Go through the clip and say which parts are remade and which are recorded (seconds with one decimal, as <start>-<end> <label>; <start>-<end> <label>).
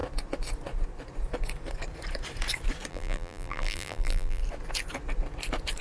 0.0-2.9 recorded; 2.9-4.4 remade; 4.4-5.8 recorded